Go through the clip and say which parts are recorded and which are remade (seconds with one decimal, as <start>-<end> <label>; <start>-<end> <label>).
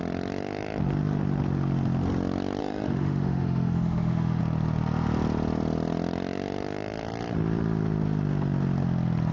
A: 0.0-2.6 recorded; 2.6-4.4 remade; 4.4-9.3 recorded